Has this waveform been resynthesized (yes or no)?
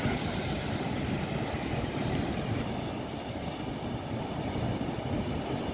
no